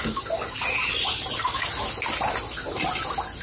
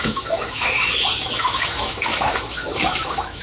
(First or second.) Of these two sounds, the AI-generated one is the second